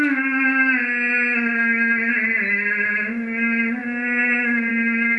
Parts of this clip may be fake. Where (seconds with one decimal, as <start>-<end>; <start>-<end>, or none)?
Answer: none